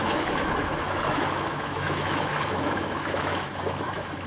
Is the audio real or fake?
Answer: fake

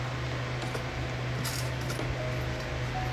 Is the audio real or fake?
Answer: real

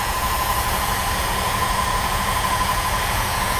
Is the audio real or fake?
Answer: fake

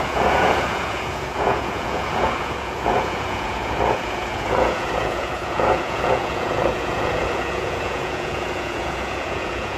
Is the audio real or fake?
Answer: fake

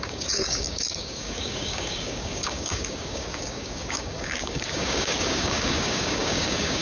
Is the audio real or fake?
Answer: fake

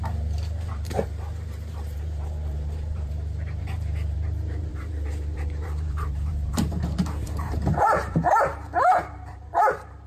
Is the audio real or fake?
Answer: fake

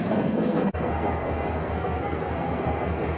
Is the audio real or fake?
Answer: fake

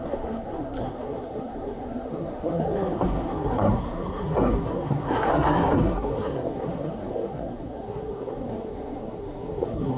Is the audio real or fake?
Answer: fake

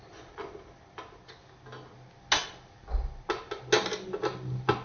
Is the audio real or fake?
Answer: real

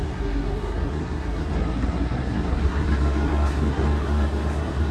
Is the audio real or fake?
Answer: fake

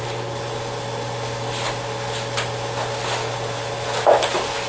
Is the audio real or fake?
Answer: real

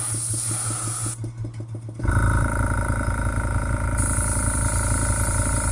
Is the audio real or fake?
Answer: real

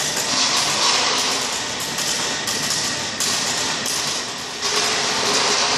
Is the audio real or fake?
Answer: fake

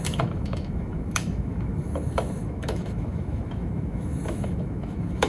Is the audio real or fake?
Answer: fake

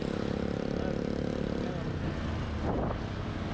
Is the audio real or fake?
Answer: real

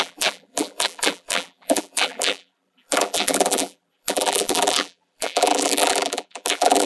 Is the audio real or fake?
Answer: fake